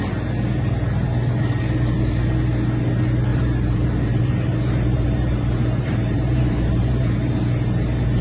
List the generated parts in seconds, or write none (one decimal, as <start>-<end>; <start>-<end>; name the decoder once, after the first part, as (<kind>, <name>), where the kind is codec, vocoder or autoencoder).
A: 3.3-7.3 (vocoder, BigVGAN v2)